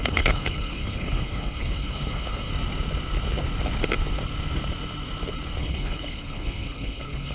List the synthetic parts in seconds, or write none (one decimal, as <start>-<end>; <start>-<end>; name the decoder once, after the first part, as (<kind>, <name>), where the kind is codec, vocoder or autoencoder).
0.0-2.5 (codec, HILCodec); 5.6-7.3